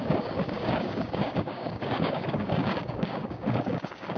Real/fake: fake